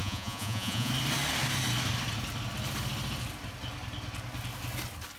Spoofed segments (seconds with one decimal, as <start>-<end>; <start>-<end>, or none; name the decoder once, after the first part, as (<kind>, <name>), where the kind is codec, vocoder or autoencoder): 0.0-0.9 (vocoder, Vocos)